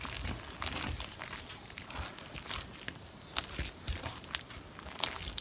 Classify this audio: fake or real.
real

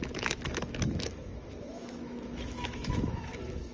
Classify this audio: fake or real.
fake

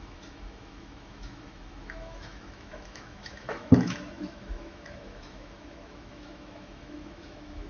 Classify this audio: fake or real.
fake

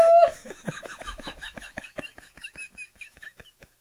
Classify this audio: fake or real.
fake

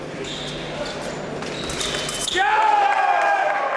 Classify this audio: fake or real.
real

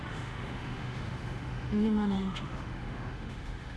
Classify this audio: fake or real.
fake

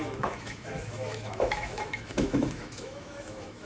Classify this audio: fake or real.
fake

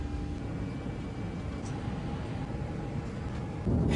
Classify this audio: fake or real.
real